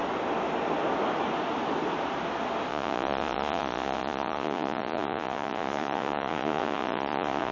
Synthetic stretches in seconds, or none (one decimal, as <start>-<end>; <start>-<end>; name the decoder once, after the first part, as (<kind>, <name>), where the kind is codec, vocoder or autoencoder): 2.7-7.5 (vocoder, Vocos)